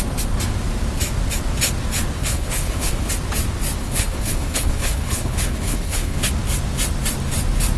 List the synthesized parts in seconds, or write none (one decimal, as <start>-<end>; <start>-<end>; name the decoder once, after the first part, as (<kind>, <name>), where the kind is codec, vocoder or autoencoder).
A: 2.2-3.1 (codec, HILCodec); 3.8-6.3